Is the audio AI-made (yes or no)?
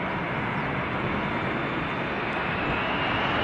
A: no